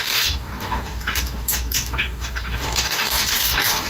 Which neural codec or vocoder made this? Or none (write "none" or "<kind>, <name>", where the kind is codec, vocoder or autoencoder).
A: codec, DAC